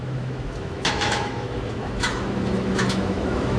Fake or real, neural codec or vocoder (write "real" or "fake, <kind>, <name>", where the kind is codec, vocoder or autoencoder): fake, autoencoder, DAC-VAE